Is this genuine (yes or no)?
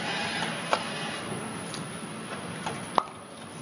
yes